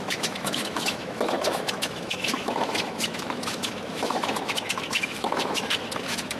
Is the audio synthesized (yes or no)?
yes